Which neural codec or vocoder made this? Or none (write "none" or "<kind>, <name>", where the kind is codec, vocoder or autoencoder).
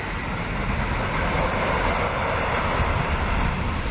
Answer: none